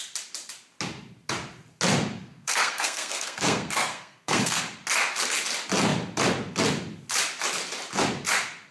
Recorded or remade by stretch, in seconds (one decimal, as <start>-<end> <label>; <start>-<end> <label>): 0.0-2.2 recorded; 2.2-4.6 remade; 4.6-8.7 recorded